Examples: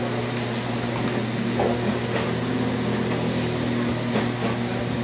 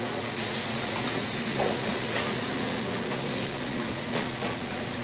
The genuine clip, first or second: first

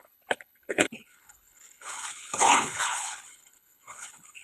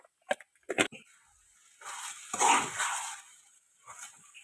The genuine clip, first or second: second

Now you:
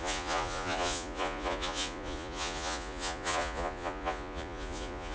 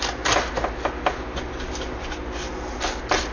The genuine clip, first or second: second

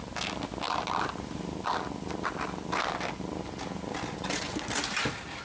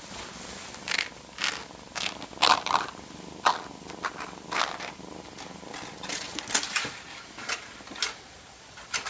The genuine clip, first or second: first